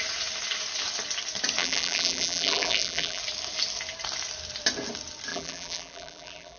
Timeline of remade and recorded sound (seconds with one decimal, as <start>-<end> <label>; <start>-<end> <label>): 0.0-1.6 recorded; 1.6-3.2 remade; 3.2-5.3 recorded; 5.3-6.6 remade